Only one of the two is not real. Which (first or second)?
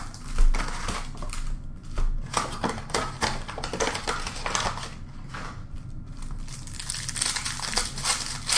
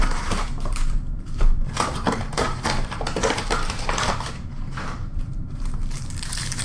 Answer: second